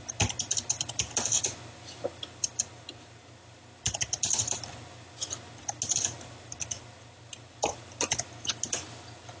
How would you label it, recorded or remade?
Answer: recorded